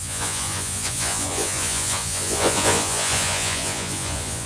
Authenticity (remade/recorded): remade